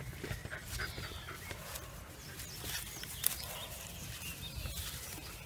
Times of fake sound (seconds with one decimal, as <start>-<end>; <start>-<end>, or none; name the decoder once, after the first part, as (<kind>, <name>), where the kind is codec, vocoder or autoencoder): none

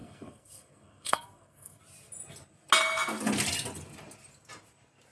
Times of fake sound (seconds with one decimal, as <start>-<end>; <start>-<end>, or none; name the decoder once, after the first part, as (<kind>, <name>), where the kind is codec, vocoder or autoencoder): 0.0-1.8 (codec, SNAC)

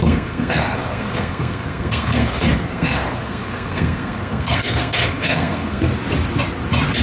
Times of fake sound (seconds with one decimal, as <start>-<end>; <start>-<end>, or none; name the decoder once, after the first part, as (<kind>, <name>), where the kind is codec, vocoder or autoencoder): 0.0-5.9 (codec, SNAC)

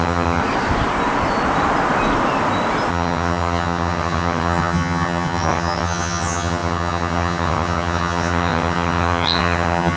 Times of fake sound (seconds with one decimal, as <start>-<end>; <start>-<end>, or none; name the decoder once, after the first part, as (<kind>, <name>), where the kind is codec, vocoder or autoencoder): 0.0-0.4 (vocoder, HiFi-GAN); 2.9-10.0